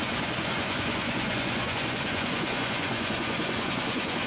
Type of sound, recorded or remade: remade